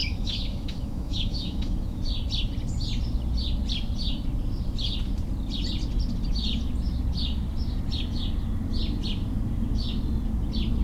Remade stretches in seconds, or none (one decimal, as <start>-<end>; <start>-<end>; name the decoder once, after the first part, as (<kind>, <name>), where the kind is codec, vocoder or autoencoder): 0.0-2.0 (autoencoder, DAC-VAE)